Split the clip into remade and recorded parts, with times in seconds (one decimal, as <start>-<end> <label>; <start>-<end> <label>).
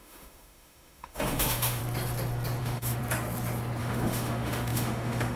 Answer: 0.0-1.8 remade; 1.8-2.6 recorded; 2.6-3.0 remade; 3.0-3.8 recorded; 3.8-5.4 remade